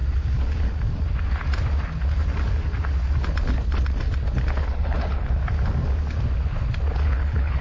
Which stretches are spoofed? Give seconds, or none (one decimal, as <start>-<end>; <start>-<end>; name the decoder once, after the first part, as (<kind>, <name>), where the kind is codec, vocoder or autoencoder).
4.6-5.4 (codec, HILCodec); 6.9-7.6